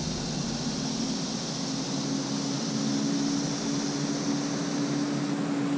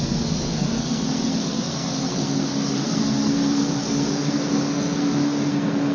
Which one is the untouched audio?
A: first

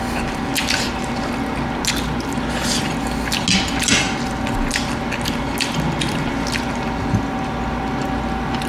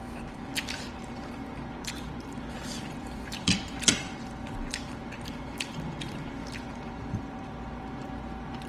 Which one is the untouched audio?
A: first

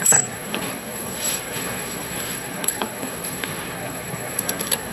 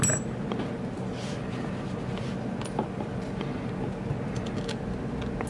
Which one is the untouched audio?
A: second